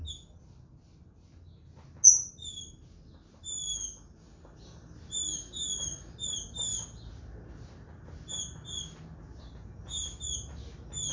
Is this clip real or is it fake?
real